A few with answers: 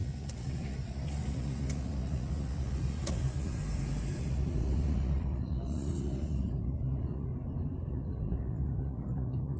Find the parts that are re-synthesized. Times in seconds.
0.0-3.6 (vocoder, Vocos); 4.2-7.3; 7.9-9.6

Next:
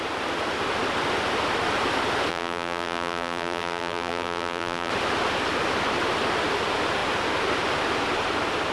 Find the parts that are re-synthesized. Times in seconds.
2.3-4.9 (vocoder, BigVGAN v2)

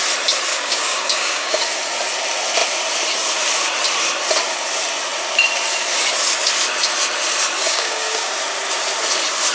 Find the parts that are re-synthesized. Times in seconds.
0.5-1.6 (codec, DAC); 7.6-8.3

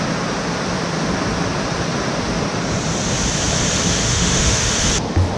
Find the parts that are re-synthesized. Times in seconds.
4.0-4.7 (autoencoder, DAC-VAE)

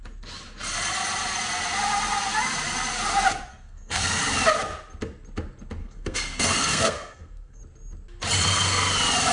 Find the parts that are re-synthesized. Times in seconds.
3.5-4.2 (codec, SNAC); 5.8-7.6

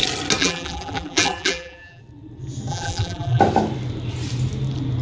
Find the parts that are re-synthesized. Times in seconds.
0.4-2.0 (vocoder, BigVGAN v2); 2.7-3.4

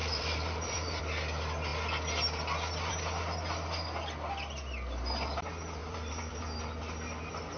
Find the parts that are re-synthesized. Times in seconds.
0.0-1.0 (vocoder, BigVGAN v2); 5.8-6.6

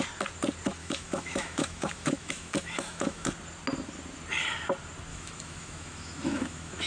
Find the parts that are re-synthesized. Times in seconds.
0.8-3.3 (autoencoder, DAC-VAE); 5.1-6.9